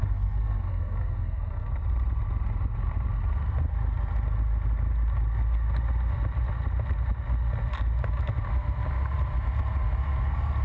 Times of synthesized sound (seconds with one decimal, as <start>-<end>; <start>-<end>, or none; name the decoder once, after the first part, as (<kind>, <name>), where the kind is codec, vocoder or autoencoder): 0.0-1.7 (codec, SNAC)